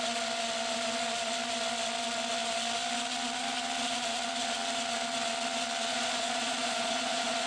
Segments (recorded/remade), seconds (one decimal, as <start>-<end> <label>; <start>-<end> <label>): 0.0-5.9 recorded; 5.9-7.5 remade